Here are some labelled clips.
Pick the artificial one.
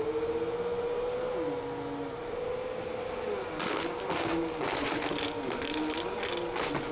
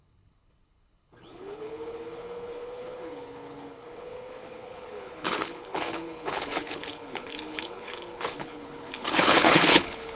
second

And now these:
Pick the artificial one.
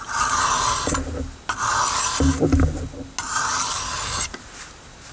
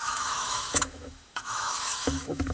second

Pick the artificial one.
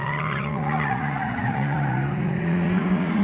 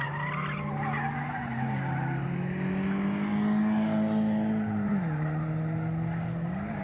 first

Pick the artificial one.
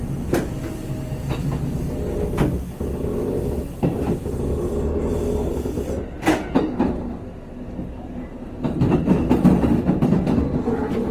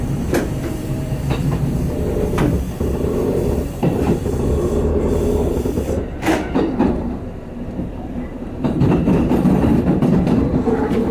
second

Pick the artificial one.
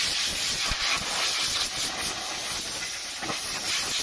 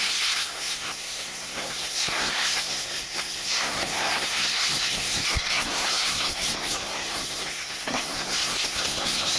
second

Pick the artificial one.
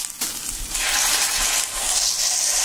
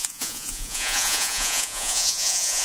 second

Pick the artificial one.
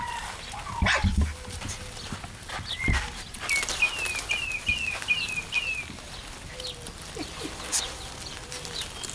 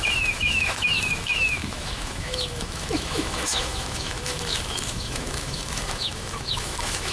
second